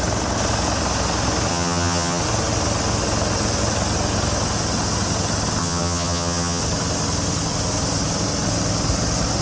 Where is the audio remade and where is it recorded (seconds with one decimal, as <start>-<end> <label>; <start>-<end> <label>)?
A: 0.0-1.5 recorded; 1.5-2.2 remade; 2.2-5.6 recorded; 5.6-6.6 remade; 6.6-9.4 recorded

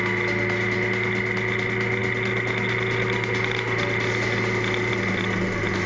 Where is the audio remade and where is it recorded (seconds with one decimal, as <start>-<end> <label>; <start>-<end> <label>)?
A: 0.0-5.9 recorded

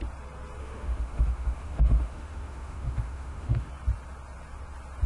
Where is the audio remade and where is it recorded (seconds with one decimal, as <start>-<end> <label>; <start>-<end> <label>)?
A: 0.0-0.6 recorded; 0.6-3.7 remade; 3.7-5.1 recorded